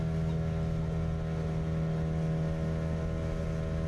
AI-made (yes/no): no